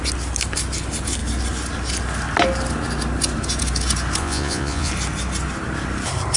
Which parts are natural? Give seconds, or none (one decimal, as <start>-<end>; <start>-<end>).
0.0-4.2; 4.9-6.4